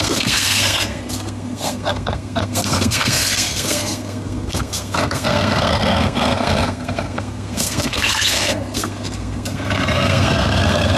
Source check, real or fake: fake